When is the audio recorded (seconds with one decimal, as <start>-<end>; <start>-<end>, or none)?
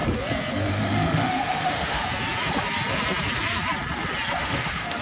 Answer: 0.0-0.7; 2.0-4.4